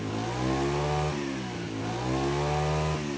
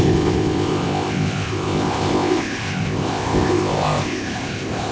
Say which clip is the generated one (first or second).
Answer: second